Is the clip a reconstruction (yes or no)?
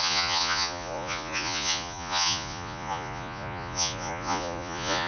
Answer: yes